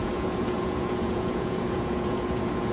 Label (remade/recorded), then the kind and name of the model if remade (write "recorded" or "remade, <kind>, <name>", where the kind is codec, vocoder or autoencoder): remade, vocoder, Vocos